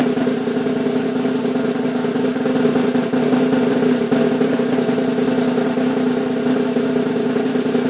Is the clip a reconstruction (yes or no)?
no